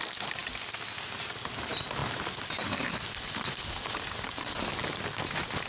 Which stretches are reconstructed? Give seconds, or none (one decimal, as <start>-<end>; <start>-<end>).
none